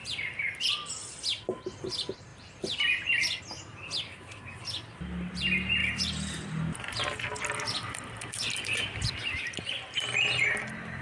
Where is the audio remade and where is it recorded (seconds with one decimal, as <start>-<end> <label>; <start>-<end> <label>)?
0.0-0.9 remade; 0.9-2.3 recorded; 2.3-3.4 remade; 3.4-7.3 recorded; 7.3-10.6 remade; 10.6-11.0 recorded